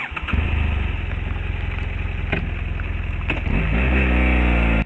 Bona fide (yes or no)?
yes